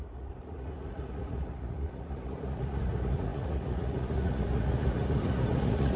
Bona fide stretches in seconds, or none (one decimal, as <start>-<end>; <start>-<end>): none